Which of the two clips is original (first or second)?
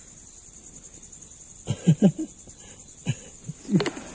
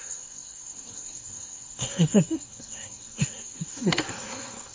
first